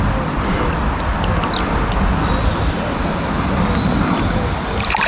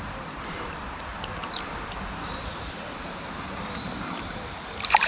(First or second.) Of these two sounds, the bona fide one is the first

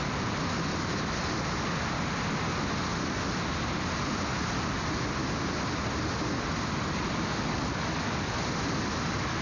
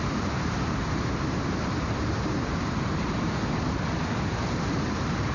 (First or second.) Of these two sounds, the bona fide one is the first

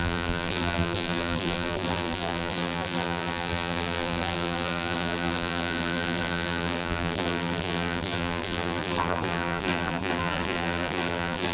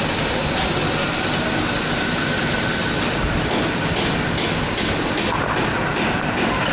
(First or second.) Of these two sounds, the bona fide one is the second